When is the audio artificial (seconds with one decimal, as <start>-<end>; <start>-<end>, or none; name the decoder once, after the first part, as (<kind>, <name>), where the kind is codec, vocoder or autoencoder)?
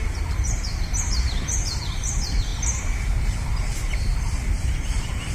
0.0-2.5 (vocoder, BigVGAN v2); 4.5-5.3